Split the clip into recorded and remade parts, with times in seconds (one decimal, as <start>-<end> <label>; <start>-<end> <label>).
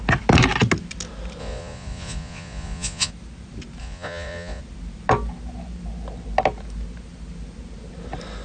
0.0-1.4 recorded; 1.4-3.1 remade; 3.1-3.8 recorded; 3.8-4.6 remade; 4.6-8.4 recorded